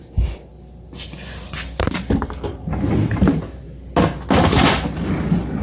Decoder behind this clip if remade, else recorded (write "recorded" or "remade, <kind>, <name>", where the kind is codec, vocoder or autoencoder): recorded